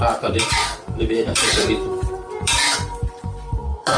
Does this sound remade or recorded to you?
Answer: remade